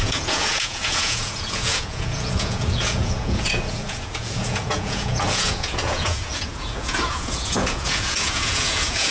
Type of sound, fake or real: fake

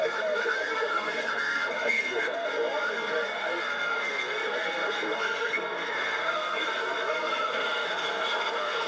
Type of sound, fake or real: fake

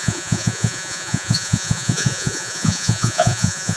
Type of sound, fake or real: fake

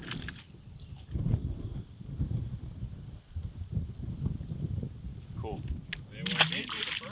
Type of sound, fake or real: real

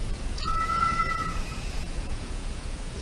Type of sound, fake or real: fake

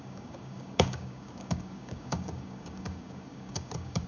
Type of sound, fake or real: fake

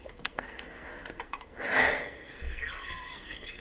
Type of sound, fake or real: fake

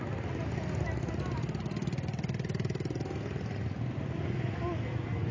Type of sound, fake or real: real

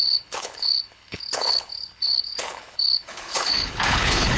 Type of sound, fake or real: fake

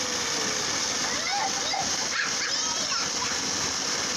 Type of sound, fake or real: real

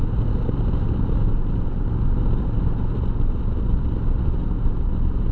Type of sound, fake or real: real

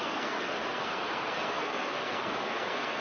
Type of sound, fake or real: fake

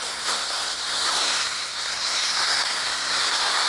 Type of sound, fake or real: fake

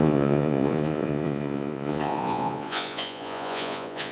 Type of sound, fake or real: fake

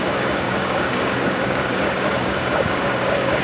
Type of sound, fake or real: fake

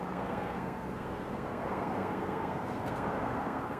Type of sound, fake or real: fake